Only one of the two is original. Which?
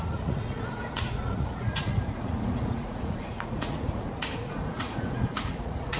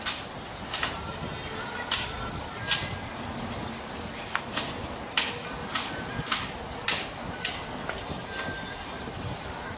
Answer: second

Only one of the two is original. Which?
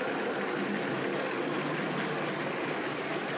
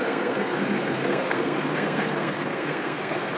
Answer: first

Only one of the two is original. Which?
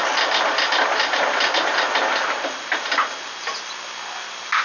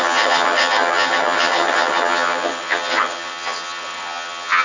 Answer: first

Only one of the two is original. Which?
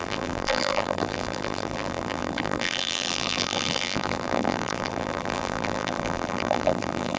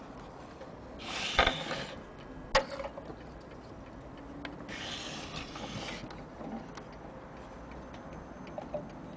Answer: second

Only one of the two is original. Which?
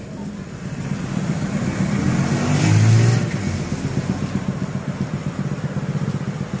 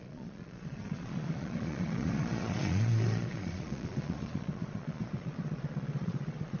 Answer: first